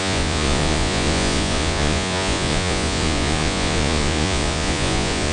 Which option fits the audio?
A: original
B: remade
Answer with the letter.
B